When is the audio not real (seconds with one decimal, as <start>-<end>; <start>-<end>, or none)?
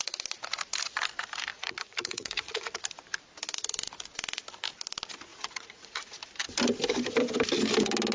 1.5-2.8; 5.3-6.2